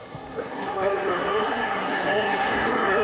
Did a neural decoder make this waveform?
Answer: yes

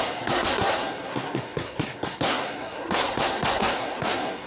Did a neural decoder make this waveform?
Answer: yes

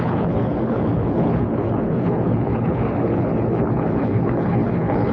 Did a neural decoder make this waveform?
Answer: yes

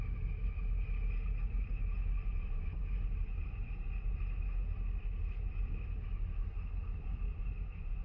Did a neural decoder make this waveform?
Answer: no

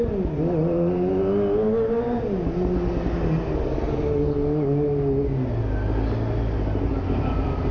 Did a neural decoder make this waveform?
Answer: no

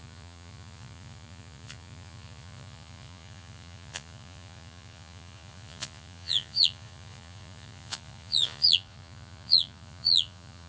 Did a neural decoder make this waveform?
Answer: yes